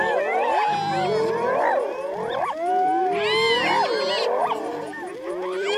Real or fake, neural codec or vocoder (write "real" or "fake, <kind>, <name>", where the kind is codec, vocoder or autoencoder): real